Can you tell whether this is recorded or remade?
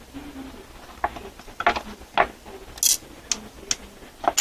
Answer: recorded